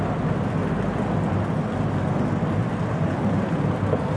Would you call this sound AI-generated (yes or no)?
no